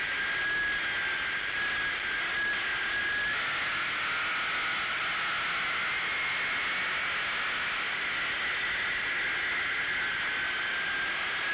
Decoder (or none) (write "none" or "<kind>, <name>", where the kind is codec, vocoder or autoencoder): none